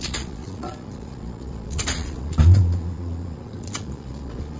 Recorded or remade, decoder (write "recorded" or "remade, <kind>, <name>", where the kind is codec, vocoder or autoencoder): remade, vocoder, Vocos